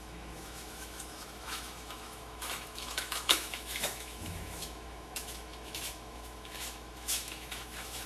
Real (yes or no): no